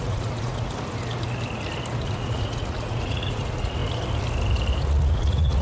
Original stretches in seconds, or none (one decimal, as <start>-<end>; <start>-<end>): 0.7-2.0; 3.8-4.8